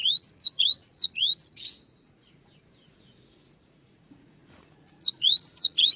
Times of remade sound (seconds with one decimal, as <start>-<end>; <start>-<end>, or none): 0.0-6.0